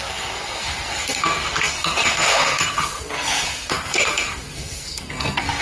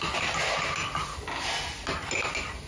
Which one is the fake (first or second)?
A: first